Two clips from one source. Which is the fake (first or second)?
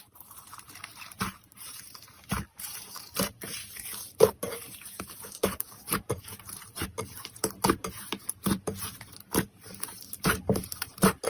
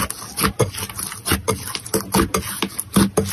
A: first